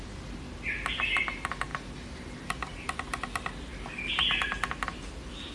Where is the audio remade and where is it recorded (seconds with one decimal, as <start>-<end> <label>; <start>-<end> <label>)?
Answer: 0.0-5.5 recorded